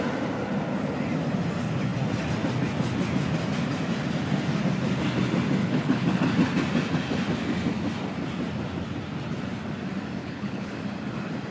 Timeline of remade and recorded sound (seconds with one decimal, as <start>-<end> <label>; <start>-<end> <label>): 0.0-5.6 recorded; 5.6-6.2 remade; 6.2-10.2 recorded; 10.2-10.7 remade; 10.7-11.5 recorded